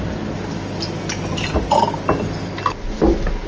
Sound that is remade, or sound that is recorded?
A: recorded